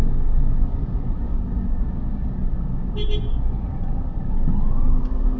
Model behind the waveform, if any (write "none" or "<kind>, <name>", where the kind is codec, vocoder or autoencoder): none